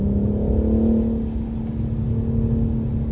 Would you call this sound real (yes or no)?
yes